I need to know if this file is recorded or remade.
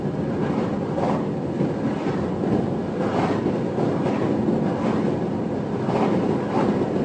recorded